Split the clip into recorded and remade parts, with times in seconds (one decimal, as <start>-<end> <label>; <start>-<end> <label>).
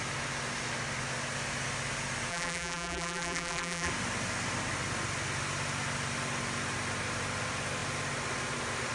0.0-2.3 recorded; 2.3-3.9 remade; 3.9-8.9 recorded